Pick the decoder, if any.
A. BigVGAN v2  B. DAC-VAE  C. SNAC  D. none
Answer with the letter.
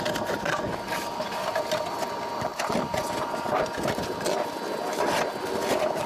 D